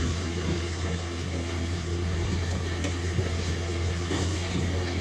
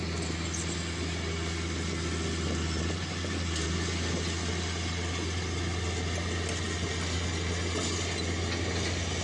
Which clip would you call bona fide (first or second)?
second